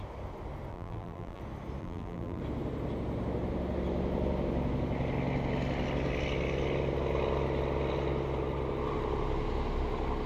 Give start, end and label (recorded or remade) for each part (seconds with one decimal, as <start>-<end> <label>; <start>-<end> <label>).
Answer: 0.0-0.7 recorded; 0.7-1.4 remade; 1.4-1.8 recorded; 1.8-2.4 remade; 2.4-10.3 recorded